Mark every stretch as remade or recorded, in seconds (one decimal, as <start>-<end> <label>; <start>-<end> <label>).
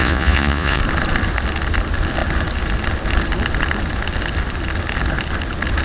0.0-0.8 remade; 0.8-5.8 recorded